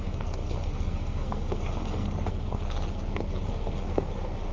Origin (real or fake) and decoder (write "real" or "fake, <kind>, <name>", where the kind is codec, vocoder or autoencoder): fake, codec, SNAC